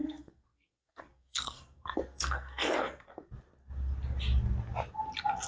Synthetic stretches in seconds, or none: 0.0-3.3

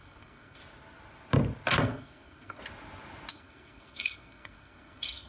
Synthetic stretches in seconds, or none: 0.0-0.6; 1.8-2.6; 3.3-5.3